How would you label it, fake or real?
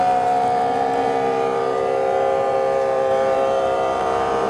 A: fake